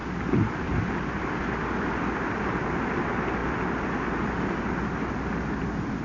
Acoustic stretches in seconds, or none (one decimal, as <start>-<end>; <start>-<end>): 0.0-6.0